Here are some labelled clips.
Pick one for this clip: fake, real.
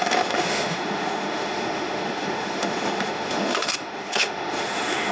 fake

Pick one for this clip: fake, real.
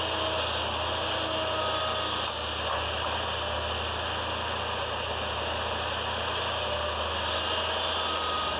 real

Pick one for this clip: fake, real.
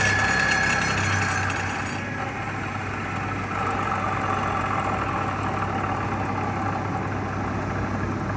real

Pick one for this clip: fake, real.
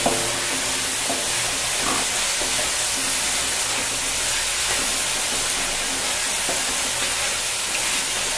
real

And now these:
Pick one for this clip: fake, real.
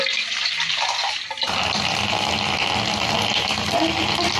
real